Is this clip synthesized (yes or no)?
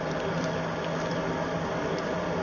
no